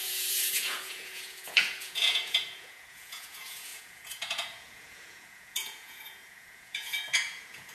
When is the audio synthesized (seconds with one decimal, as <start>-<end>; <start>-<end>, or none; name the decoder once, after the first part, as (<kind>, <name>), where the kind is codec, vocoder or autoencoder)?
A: 0.0-7.7 (vocoder, Vocos)